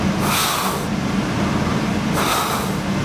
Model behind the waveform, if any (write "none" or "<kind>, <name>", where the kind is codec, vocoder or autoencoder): none